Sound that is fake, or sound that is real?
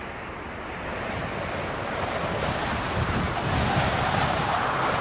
real